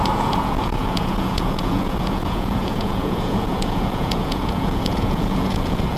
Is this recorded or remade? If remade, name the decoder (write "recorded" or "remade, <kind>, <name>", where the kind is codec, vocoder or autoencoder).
remade, vocoder, Vocos